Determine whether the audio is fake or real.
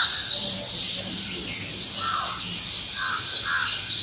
real